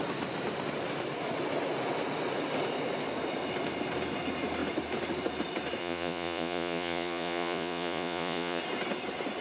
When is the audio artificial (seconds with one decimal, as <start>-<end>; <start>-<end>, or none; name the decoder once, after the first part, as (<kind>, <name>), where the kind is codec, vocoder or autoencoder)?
5.8-8.6 (vocoder, Vocos)